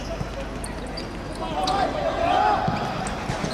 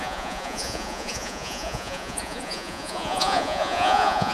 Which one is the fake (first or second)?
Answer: second